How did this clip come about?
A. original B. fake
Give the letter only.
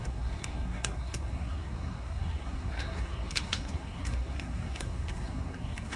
B